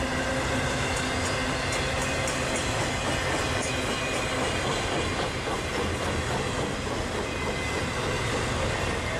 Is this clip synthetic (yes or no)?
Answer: no